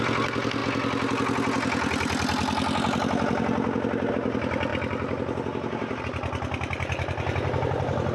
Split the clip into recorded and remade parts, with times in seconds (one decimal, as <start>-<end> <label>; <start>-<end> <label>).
0.0-8.1 recorded